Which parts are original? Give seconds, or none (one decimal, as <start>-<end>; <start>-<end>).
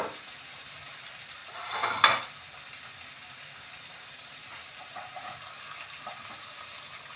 0.0-7.2